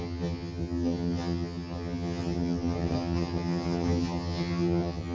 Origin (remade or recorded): remade